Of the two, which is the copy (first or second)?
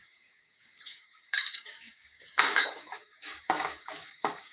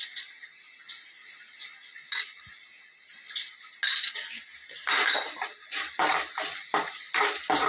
first